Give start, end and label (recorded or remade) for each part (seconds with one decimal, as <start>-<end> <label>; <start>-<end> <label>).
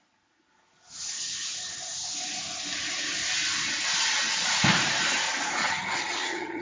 0.0-5.6 recorded; 5.6-6.6 remade